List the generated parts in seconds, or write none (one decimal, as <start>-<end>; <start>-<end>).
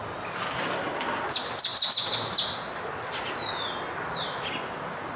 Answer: none